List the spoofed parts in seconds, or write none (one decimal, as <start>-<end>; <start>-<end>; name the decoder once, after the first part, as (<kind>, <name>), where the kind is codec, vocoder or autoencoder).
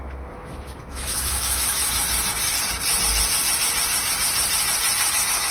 0.0-1.8 (autoencoder, DAC-VAE); 5.1-5.5